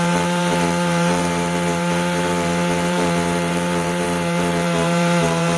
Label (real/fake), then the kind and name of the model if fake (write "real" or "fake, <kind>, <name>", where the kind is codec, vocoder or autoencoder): fake, vocoder, BigVGAN v2